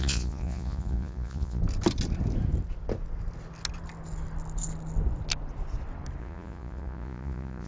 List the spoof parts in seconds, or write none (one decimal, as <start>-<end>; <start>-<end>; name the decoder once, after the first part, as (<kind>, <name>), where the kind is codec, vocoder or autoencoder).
0.0-1.6 (vocoder, Vocos); 6.2-7.7